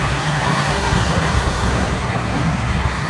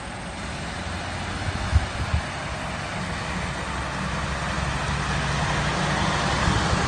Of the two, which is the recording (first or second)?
second